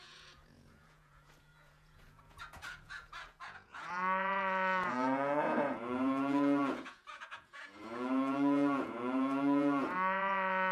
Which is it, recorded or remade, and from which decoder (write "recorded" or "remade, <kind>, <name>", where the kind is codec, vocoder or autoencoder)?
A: remade, vocoder, Vocos